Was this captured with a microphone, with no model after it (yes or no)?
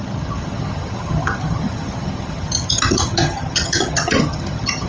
no